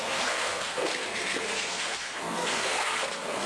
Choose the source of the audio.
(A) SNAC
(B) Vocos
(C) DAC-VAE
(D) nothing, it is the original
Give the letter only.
A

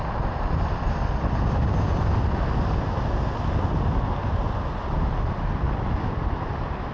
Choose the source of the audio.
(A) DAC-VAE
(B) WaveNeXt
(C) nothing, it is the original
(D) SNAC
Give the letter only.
C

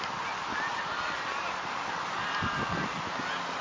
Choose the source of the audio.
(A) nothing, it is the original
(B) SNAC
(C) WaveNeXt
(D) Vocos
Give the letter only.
A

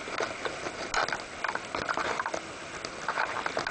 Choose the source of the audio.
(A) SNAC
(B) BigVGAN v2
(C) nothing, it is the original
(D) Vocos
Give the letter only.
C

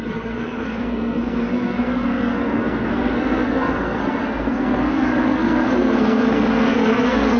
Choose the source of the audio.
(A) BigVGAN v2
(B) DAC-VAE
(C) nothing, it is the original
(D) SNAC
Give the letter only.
D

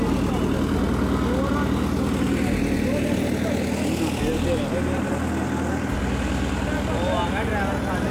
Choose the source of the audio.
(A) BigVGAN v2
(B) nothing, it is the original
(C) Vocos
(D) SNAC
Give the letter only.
B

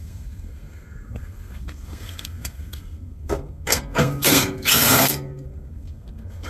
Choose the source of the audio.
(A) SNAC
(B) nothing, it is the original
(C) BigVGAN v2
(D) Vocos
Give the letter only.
A